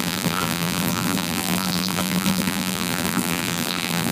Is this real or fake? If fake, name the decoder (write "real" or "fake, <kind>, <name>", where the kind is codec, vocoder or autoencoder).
fake, vocoder, BigVGAN v2